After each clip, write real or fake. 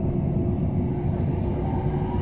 real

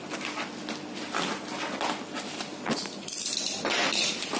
real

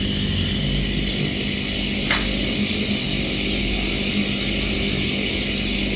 real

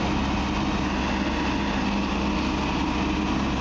real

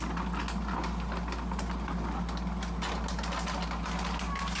real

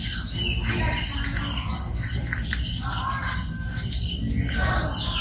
real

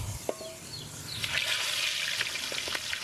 real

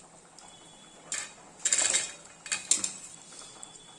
real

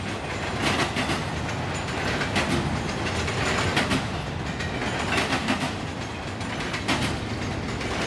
real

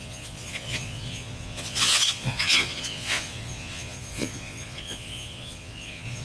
fake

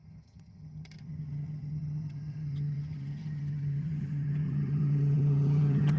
fake